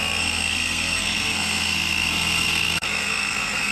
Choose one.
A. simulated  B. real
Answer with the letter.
A